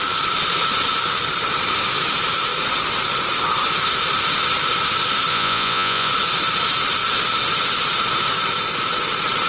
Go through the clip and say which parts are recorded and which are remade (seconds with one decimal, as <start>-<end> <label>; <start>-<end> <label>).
0.0-5.3 recorded; 5.3-6.1 remade; 6.1-9.5 recorded